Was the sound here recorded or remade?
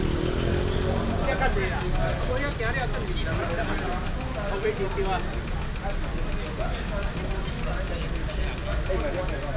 recorded